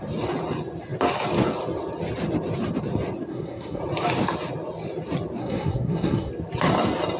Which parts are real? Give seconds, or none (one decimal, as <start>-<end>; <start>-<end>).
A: 0.0-3.3; 3.8-5.4; 6.3-7.2